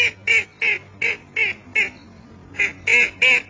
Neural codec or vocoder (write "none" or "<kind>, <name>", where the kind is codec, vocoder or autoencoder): none